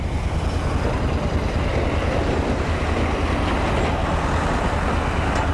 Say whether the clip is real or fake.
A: real